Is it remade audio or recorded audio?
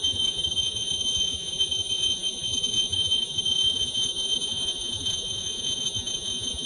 remade